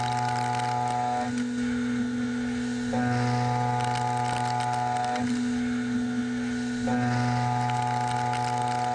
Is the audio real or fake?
real